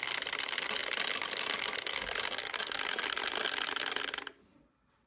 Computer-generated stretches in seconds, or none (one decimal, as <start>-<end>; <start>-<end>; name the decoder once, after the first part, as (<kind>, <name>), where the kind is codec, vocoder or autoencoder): none